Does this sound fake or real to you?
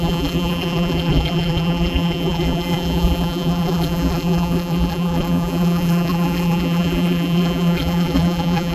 fake